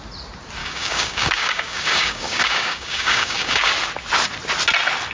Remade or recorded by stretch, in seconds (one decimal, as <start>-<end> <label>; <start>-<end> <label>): 0.0-0.6 recorded; 0.6-3.7 remade; 3.7-5.1 recorded